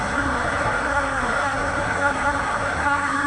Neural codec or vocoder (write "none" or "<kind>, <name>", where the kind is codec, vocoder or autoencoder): codec, SNAC